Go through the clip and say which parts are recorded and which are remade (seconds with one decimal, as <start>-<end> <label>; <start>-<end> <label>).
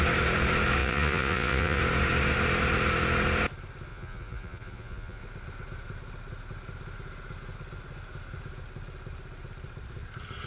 0.0-0.8 recorded; 0.8-1.8 remade; 1.8-3.9 recorded; 3.9-5.2 remade; 5.2-10.5 recorded